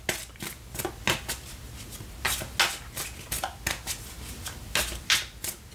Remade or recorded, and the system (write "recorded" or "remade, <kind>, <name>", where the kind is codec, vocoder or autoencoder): recorded